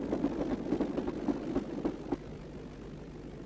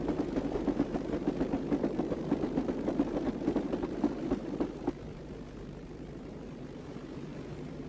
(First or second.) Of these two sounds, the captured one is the first